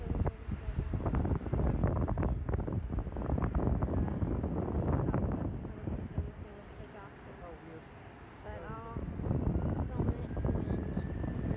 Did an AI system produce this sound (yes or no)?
no